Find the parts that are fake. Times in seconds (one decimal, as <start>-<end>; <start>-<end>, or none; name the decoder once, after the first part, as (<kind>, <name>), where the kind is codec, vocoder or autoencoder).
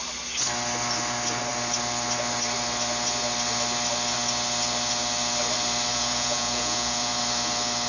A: 5.9-7.2 (vocoder, Vocos)